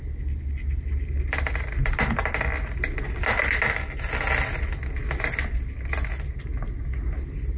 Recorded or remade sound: recorded